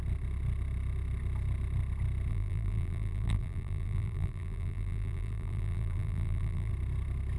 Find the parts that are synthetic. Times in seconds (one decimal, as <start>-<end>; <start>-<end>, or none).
2.3-6.7